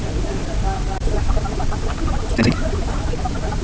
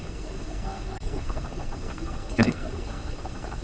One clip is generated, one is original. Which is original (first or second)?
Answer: first